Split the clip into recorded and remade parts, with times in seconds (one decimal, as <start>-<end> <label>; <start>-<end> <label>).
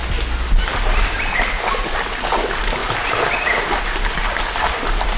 0.0-5.2 recorded